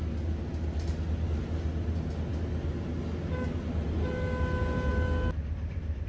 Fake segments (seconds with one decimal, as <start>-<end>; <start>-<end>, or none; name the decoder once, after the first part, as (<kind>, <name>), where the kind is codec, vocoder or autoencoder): none